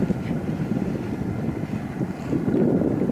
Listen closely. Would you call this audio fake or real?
real